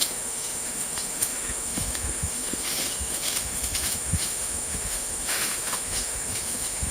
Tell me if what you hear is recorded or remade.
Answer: remade